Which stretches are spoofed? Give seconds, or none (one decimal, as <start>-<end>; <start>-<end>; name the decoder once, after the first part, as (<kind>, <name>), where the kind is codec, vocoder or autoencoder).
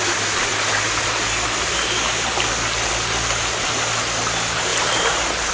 none